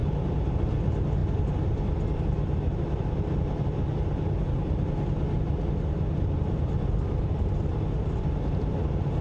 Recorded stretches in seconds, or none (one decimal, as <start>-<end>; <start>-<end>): 0.0-9.2